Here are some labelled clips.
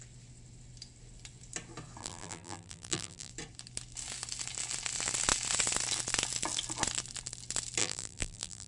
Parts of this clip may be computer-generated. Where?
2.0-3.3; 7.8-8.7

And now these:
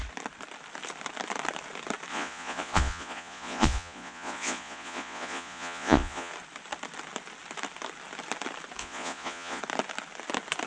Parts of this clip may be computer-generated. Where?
2.1-6.3; 8.8-9.6

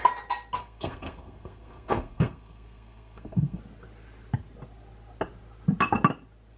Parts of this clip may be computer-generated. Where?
0.6-3.6

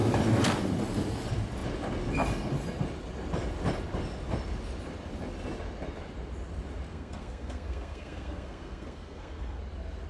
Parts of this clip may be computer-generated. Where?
6.9-9.6